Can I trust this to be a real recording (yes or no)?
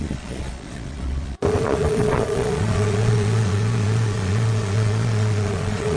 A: no